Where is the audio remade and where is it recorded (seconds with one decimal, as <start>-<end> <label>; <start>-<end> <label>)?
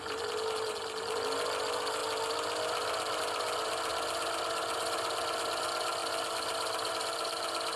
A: 0.0-7.8 recorded